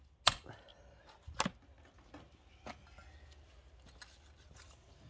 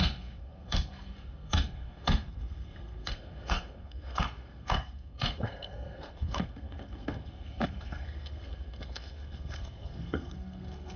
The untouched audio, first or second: first